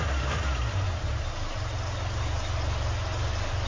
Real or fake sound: real